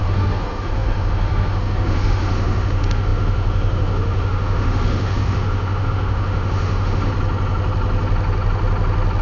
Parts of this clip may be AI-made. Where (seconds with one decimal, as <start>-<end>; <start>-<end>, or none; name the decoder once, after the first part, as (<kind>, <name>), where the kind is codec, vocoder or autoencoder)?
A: 0.0-7.1 (autoencoder, DAC-VAE)